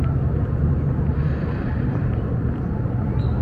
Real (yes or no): no